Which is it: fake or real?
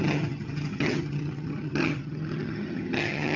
fake